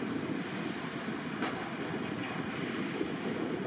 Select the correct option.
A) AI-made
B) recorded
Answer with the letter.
B